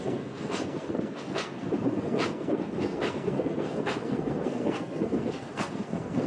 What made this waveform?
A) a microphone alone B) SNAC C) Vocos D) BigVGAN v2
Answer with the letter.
B